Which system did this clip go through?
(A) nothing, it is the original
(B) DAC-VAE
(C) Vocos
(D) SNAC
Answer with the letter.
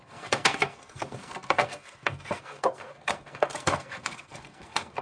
D